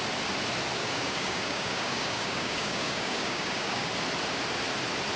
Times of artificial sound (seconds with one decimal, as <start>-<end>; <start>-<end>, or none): 0.8-3.9